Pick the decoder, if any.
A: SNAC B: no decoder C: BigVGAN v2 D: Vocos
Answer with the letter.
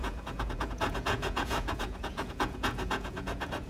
D